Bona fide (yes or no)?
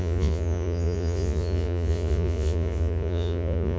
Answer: no